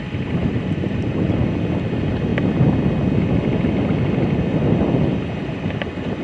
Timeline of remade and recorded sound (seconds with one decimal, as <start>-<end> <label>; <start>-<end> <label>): 0.0-2.3 remade; 2.3-3.9 recorded; 3.9-6.2 remade